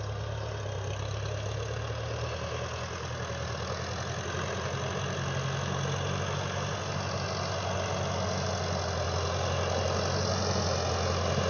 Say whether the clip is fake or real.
real